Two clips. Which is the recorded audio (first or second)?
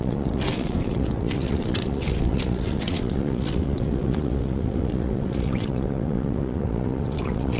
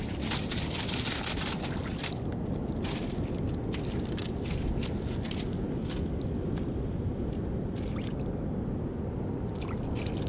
second